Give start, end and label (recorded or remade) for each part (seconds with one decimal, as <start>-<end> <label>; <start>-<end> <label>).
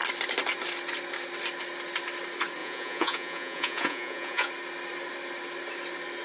0.0-2.6 recorded; 2.6-4.5 remade; 4.5-6.2 recorded